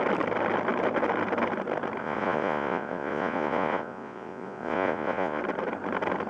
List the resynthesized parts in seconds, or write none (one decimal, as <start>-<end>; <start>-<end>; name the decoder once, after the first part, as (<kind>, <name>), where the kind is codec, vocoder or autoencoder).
2.0-5.4 (vocoder, Vocos)